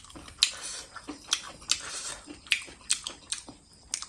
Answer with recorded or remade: recorded